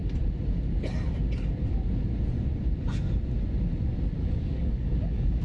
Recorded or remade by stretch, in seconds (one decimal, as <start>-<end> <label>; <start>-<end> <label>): 0.0-4.2 recorded; 4.2-5.4 remade